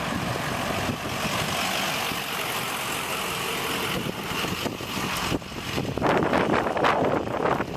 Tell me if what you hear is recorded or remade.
recorded